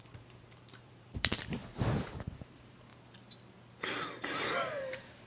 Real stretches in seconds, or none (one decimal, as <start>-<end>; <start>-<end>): 1.6-2.2; 2.9-4.2